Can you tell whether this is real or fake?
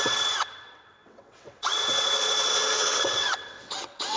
fake